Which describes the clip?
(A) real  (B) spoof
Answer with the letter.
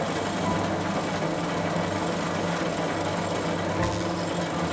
A